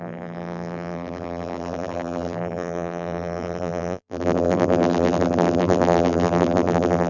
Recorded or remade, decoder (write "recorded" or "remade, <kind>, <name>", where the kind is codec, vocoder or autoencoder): remade, vocoder, BigVGAN v2